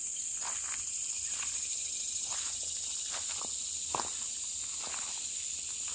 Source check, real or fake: real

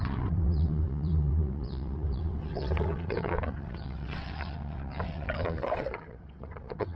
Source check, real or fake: fake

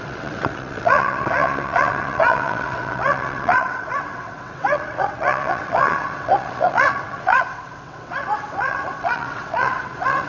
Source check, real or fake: fake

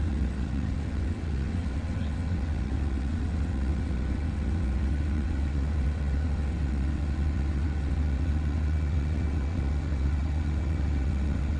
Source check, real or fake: fake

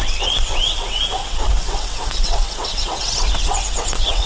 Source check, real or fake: fake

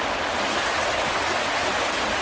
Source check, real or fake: real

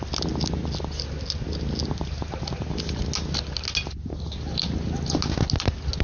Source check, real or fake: real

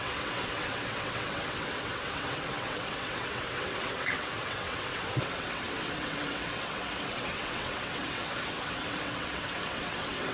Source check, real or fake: fake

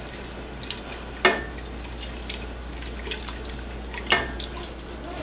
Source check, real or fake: real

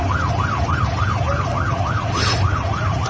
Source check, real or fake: real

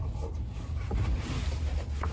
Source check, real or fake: real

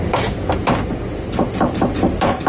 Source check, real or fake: real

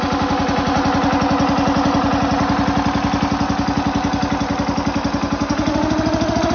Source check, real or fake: real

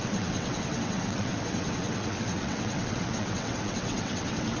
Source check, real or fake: fake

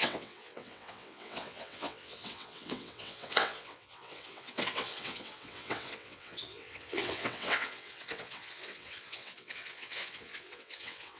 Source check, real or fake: fake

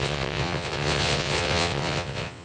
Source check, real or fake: fake